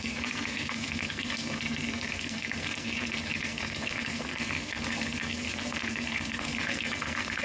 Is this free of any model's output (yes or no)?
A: no